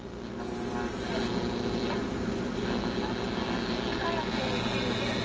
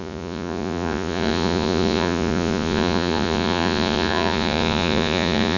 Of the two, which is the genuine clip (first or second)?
first